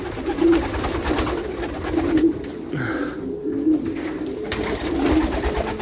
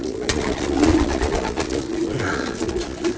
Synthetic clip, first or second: second